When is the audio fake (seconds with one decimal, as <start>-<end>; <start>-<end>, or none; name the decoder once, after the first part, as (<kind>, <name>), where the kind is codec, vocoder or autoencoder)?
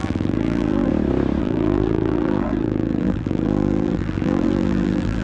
0.0-0.9 (vocoder, BigVGAN v2); 1.4-5.2